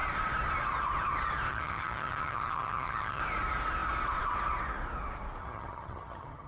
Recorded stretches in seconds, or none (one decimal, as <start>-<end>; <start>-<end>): 0.0-1.5; 3.2-5.4